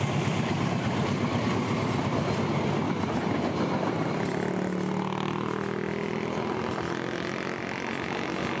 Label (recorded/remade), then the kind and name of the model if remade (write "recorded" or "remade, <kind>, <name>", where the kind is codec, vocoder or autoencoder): recorded